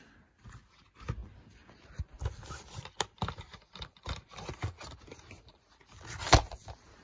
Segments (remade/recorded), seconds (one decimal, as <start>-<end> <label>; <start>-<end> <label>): 0.0-7.0 recorded